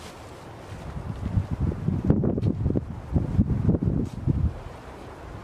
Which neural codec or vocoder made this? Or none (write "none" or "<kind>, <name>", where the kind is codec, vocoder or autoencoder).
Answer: none